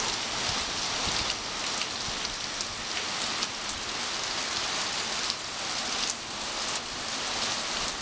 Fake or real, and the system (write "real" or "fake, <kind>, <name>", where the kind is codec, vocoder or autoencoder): real